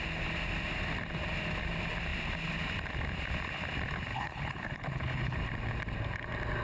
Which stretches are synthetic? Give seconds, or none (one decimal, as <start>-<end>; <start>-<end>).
4.1-5.4